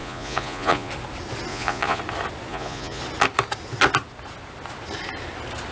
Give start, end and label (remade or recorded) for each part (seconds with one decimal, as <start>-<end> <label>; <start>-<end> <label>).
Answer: 0.0-0.9 remade; 0.9-1.5 recorded; 1.5-2.0 remade; 2.0-2.5 recorded; 2.5-3.0 remade; 3.0-5.7 recorded